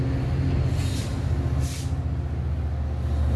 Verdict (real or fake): real